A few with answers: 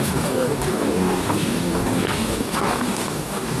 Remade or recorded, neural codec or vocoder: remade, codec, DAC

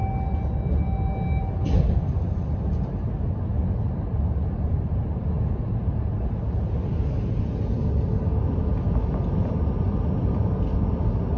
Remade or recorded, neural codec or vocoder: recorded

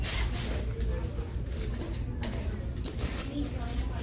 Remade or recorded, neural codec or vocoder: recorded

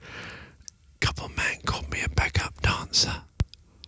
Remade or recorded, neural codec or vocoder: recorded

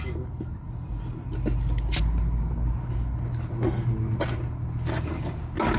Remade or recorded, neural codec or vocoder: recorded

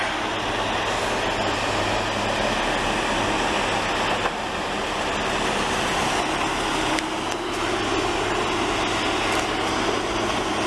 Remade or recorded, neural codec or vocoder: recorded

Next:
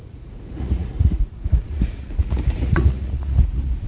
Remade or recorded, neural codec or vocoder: remade, vocoder, Vocos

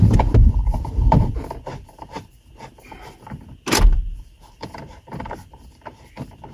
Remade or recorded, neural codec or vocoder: remade, vocoder, BigVGAN v2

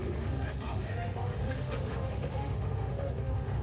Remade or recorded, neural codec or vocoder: remade, autoencoder, DAC-VAE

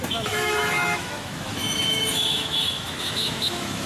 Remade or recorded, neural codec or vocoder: remade, autoencoder, DAC-VAE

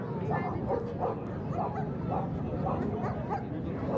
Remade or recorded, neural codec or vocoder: recorded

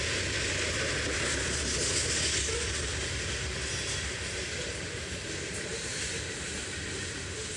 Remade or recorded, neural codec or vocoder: recorded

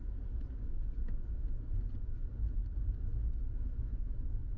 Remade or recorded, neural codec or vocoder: recorded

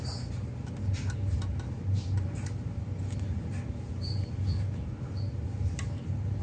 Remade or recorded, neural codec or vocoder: recorded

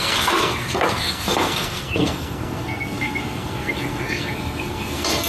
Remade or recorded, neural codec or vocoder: remade, codec, SNAC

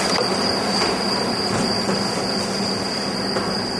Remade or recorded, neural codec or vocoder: recorded